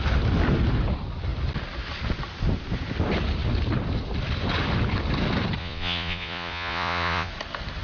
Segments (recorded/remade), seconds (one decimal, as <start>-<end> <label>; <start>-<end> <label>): 0.0-5.6 recorded; 5.6-7.3 remade; 7.3-7.8 recorded